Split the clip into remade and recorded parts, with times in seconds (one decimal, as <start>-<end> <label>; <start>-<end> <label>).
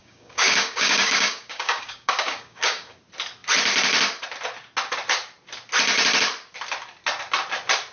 0.0-3.0 remade; 3.0-7.9 recorded